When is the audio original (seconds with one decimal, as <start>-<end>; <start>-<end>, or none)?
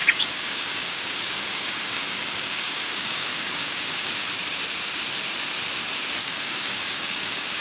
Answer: 4.1-6.2